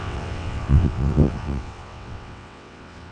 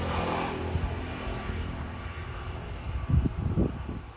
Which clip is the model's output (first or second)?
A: first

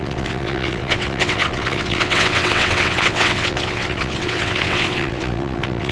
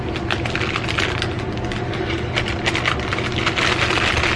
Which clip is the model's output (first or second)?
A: first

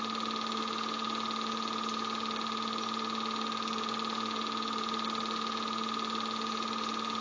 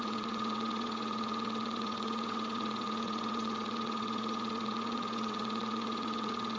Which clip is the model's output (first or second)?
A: second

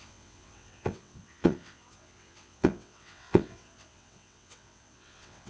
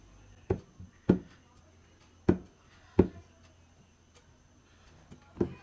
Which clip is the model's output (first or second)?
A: first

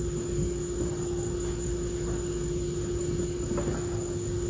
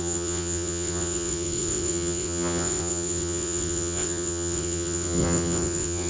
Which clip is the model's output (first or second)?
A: second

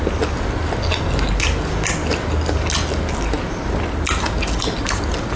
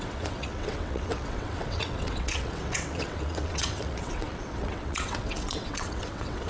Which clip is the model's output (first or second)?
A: second